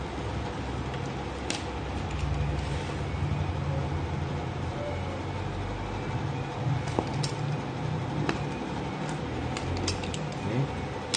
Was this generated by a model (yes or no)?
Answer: no